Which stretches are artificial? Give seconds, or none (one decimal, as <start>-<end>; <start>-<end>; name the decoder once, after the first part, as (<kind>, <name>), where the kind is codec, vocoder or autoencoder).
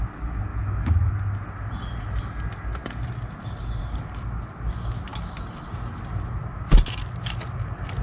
0.5-1.1 (autoencoder, DAC-VAE)